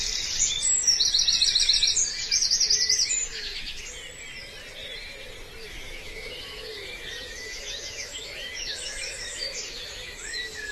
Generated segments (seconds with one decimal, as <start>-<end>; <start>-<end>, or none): 3.2-3.8; 5.6-10.7